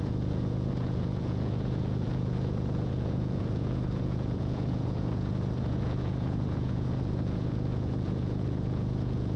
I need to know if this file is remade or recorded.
remade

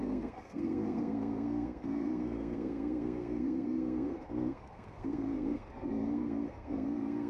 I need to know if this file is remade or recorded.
remade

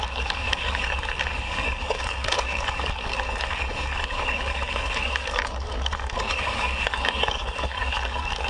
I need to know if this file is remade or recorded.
remade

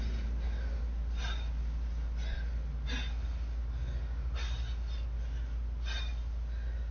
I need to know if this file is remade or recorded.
recorded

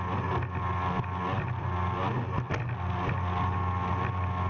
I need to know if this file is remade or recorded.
recorded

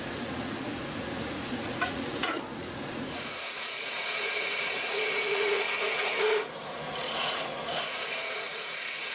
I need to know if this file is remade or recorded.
remade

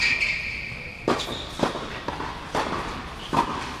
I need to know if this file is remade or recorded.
recorded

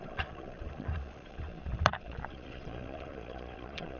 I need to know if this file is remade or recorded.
remade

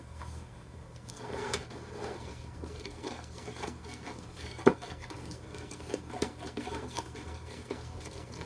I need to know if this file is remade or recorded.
remade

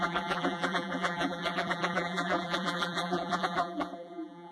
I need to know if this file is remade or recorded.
remade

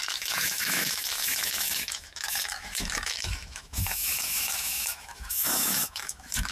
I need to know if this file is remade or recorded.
remade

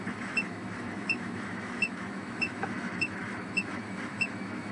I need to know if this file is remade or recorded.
remade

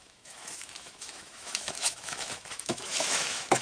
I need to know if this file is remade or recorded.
remade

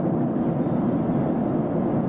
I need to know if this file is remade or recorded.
recorded